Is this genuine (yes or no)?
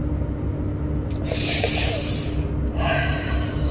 yes